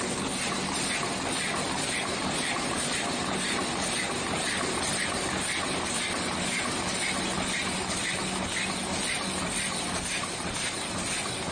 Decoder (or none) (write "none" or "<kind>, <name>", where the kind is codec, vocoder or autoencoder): none